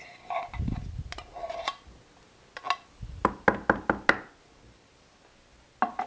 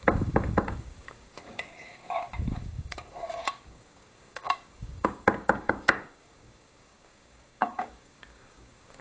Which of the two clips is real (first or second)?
first